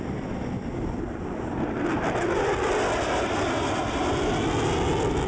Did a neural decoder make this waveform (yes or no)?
no